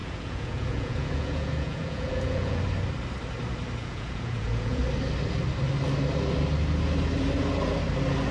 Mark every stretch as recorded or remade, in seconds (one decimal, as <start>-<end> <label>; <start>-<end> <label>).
0.0-2.6 remade; 2.6-3.8 recorded; 3.8-4.8 remade; 4.8-8.3 recorded